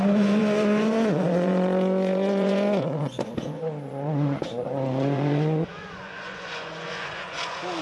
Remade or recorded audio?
remade